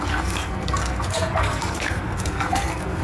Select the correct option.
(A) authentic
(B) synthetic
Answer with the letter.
B